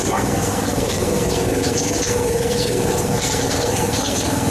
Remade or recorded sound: remade